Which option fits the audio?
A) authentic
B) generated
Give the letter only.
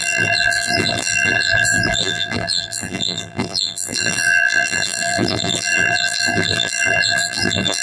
B